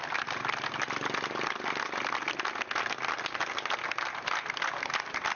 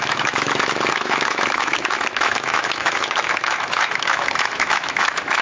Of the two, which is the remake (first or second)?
second